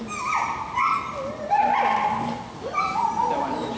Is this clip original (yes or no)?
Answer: yes